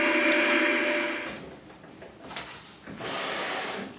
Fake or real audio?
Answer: real